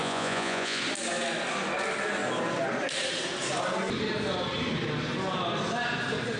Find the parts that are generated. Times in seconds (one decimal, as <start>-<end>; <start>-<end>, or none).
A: 0.0-0.8